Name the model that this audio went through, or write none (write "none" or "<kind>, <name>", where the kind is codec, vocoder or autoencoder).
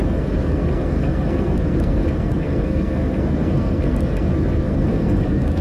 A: codec, SNAC